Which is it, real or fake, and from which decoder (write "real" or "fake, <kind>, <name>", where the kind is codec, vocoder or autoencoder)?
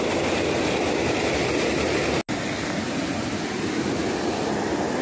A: real